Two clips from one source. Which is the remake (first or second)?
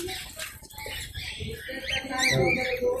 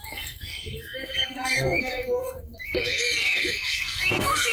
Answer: second